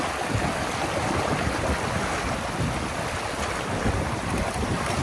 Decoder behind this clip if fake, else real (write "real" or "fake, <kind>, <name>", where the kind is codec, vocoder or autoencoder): real